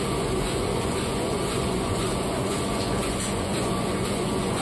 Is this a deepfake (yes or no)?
yes